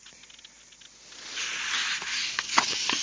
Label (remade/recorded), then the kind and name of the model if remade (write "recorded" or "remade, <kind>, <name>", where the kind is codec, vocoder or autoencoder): recorded